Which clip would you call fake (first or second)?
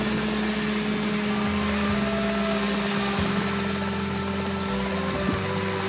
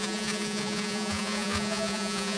second